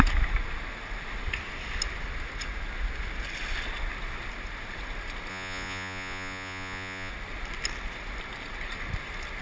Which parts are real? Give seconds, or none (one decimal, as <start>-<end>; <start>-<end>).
0.0-5.3; 7.1-9.4